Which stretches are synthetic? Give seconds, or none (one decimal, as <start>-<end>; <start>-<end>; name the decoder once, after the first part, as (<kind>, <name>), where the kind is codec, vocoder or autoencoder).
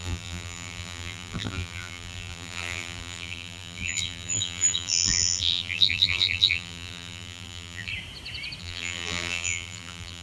0.0-7.9 (vocoder, BigVGAN v2); 8.6-10.2